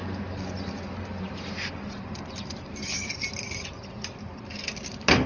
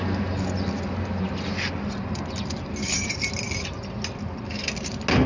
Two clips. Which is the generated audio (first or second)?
first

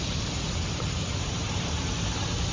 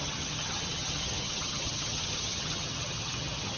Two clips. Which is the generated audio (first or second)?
second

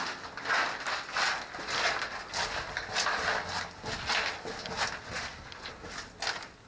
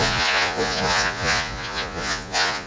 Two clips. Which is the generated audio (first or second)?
second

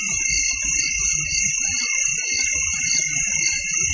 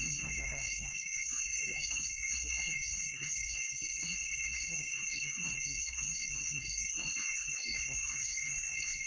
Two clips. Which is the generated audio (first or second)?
second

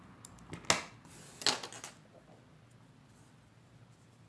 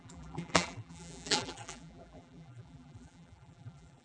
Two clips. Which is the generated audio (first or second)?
second